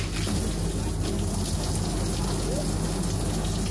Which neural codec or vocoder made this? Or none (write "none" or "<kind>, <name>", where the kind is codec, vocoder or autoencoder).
none